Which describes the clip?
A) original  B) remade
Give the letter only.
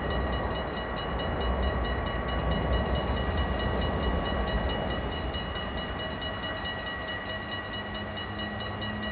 A